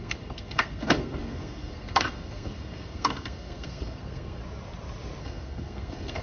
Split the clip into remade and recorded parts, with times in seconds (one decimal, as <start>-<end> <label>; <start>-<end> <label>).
0.0-4.4 remade; 4.4-5.2 recorded; 5.2-6.2 remade